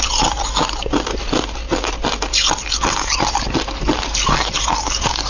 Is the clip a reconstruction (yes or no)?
no